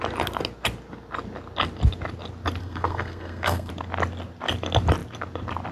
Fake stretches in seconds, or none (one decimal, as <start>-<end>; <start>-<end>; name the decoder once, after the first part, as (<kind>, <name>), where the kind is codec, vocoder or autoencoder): 2.6-3.7 (codec, SNAC)